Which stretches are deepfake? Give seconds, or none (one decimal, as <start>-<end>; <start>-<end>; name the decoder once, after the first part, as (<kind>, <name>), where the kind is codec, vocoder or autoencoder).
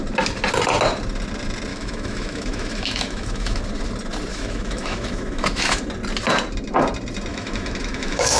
1.7-3.6 (autoencoder, DAC-VAE); 4.3-5.8; 7.3-8.4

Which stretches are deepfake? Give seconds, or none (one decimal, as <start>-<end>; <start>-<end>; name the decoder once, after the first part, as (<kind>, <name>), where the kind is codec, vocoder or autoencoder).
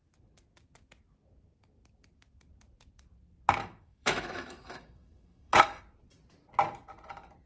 3.6-5.8 (autoencoder, DAC-VAE)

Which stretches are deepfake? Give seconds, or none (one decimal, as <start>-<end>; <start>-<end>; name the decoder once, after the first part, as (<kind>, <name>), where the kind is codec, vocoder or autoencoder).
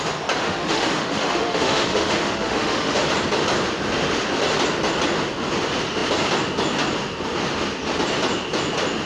0.4-3.0 (autoencoder, DAC-VAE)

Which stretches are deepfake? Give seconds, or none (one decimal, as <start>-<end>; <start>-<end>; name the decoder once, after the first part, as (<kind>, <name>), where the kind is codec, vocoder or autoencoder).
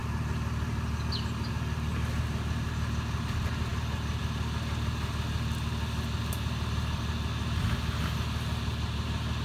none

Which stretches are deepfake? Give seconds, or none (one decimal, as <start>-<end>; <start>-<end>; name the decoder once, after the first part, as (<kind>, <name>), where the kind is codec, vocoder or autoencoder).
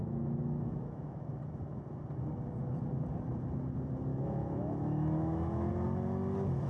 0.0-1.2 (autoencoder, DAC-VAE); 4.1-5.7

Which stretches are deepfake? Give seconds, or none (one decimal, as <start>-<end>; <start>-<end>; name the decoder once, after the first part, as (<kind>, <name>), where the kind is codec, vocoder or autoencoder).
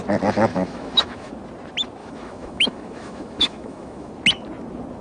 0.5-1.3 (autoencoder, DAC-VAE); 2.0-4.1